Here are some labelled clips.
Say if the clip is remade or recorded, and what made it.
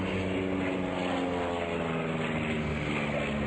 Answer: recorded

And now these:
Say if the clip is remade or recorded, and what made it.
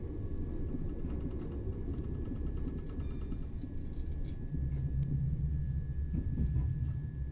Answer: recorded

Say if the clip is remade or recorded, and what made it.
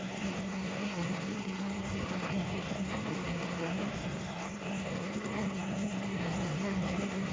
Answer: remade, codec, SNAC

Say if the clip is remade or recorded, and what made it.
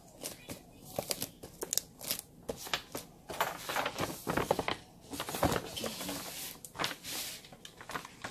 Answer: recorded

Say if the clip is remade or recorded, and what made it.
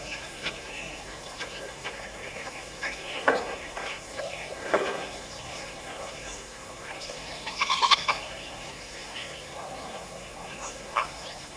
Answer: remade, codec, SNAC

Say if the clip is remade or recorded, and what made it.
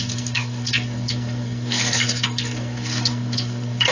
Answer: remade, codec, SNAC